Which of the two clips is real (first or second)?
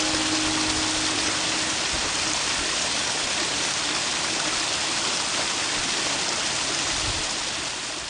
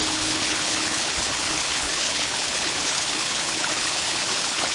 first